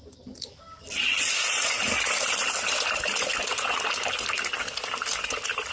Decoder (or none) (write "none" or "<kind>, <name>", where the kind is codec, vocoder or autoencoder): none